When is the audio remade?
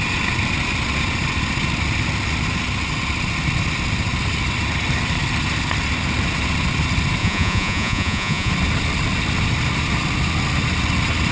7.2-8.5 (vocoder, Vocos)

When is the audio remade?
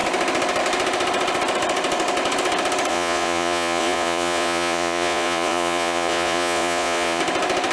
2.9-7.2 (vocoder, Vocos)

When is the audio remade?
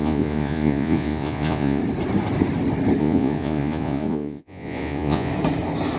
0.0-1.8 (vocoder, Vocos); 3.0-5.3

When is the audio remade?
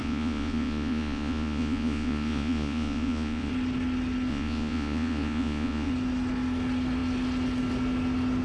0.0-3.5 (vocoder, Vocos); 4.3-5.9